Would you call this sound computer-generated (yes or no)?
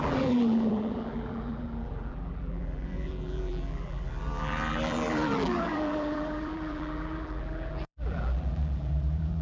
yes